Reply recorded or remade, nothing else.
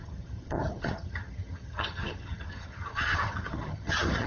remade